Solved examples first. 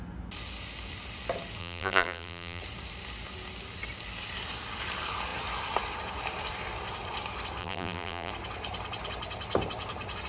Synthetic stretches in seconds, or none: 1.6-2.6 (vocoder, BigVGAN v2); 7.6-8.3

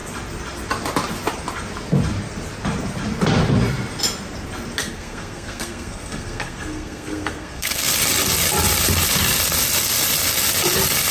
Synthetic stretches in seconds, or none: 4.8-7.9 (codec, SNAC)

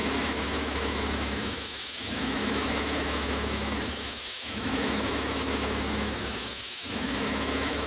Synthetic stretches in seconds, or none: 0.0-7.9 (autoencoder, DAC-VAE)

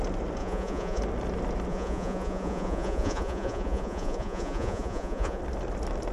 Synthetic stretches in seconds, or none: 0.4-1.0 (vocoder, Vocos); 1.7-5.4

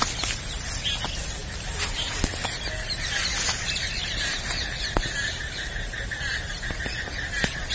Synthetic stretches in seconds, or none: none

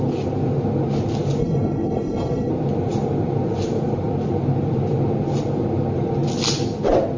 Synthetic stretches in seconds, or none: 1.4-2.5 (codec, HILCodec)